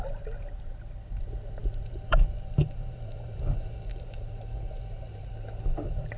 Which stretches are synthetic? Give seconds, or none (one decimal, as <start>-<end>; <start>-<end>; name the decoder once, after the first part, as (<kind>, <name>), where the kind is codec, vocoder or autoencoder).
1.6-5.3 (vocoder, BigVGAN v2)